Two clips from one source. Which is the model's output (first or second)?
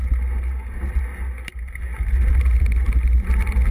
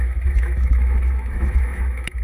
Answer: second